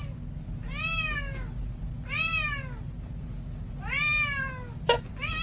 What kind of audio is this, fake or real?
real